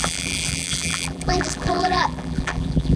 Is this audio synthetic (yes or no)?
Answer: yes